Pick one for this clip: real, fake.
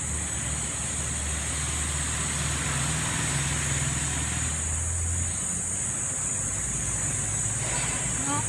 real